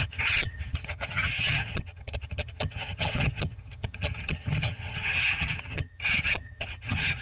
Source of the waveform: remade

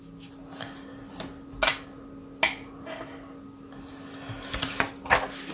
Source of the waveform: recorded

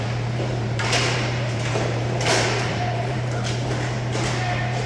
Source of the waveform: remade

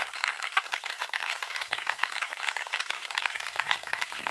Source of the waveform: remade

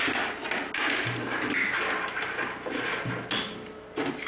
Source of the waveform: recorded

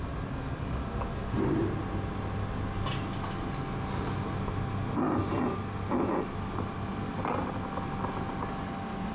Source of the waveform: recorded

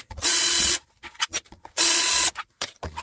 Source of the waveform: remade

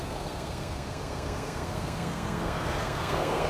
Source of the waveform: remade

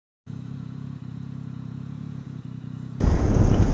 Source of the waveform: remade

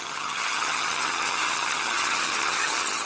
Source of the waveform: remade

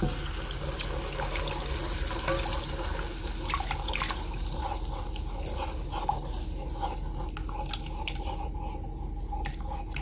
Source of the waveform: recorded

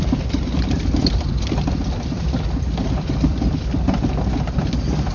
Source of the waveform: recorded